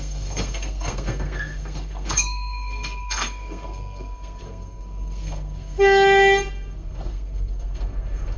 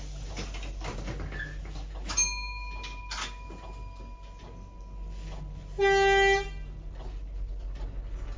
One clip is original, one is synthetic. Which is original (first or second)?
second